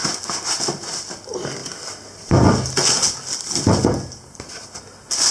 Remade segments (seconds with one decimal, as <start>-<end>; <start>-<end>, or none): none